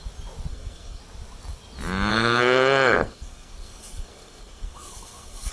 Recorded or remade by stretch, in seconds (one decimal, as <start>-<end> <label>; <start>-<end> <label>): 0.0-0.5 recorded; 0.5-1.0 remade; 1.0-2.1 recorded; 2.1-5.5 remade